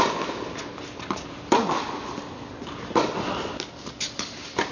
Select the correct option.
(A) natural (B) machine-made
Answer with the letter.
A